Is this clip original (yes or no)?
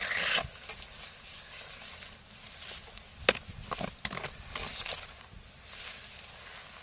yes